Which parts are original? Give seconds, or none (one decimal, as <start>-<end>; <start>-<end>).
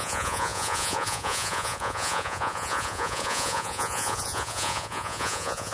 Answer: none